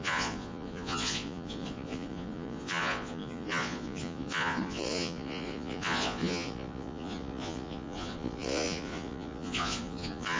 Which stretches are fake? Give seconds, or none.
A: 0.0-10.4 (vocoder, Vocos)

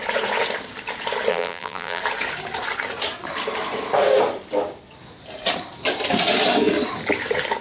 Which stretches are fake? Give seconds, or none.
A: 1.3-2.0 (vocoder, BigVGAN v2)

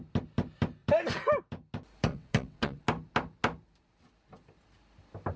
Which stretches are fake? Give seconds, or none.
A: 2.1-2.8 (vocoder, WaveNeXt)

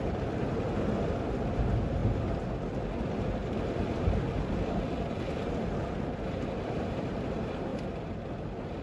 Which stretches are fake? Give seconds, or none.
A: 2.0-2.9 (vocoder, BigVGAN v2); 3.4-5.4

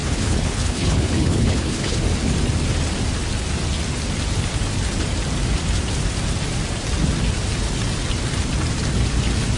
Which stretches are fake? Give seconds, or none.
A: 0.0-2.0 (codec, HILCodec)

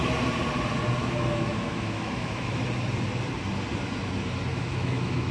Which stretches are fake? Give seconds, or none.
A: 1.0-2.6 (autoencoder, DAC-VAE); 4.5-5.3

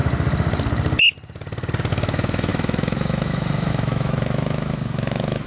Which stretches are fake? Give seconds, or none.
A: 1.9-5.5 (autoencoder, DAC-VAE)